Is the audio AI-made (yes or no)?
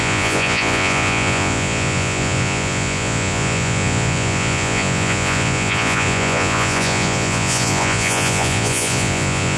yes